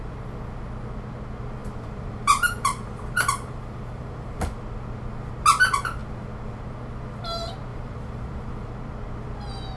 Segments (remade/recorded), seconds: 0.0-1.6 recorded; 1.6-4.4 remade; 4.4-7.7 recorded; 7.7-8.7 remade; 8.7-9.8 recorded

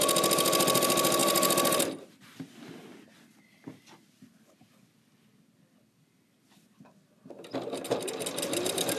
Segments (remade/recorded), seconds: 0.0-9.0 recorded